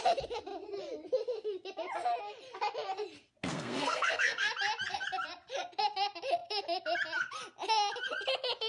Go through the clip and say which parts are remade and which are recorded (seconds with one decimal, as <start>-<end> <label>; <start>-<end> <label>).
0.0-3.5 recorded; 3.5-4.5 remade; 4.5-8.7 recorded